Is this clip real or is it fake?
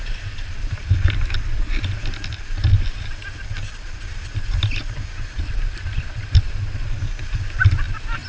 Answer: real